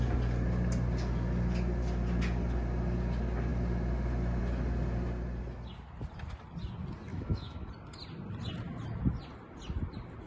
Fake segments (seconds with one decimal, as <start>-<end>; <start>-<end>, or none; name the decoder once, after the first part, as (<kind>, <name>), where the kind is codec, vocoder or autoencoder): 7.1-7.7 (autoencoder, DAC-VAE)